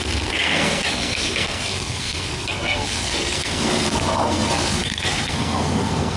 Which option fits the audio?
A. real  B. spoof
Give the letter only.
B